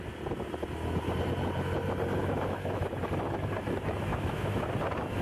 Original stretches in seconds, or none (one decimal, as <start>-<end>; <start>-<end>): 0.0-2.2; 2.8-4.1; 4.7-5.2